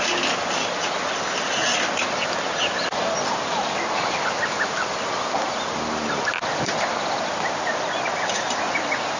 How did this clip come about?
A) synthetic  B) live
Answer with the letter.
B